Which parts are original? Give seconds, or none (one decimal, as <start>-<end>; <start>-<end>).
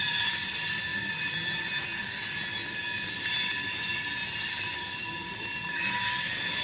0.0-4.2; 5.3-6.6